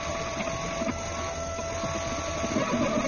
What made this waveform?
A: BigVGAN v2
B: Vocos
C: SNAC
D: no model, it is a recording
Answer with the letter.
D